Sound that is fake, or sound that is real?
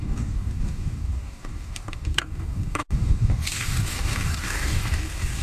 fake